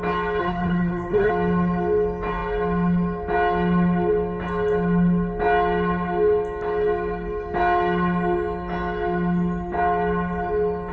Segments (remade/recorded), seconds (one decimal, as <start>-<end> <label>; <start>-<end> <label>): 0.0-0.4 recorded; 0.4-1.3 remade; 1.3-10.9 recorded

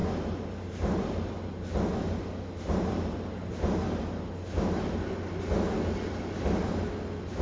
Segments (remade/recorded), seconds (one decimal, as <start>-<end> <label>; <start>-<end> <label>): 0.0-7.4 recorded

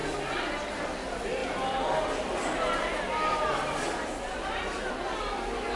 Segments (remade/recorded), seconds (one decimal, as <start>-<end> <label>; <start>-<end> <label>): 0.0-5.8 recorded